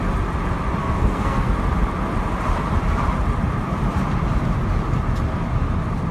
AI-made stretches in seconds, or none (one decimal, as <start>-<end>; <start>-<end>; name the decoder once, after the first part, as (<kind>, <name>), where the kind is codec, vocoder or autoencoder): 0.8-1.5 (codec, SNAC)